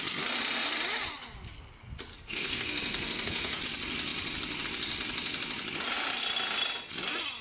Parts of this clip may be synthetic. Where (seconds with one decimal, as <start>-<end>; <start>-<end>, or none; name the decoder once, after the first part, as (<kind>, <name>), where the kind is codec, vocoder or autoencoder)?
2.1-3.6 (codec, SNAC)